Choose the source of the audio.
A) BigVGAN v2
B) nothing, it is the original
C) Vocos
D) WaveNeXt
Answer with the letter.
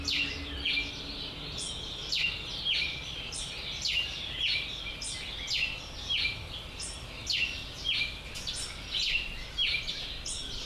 B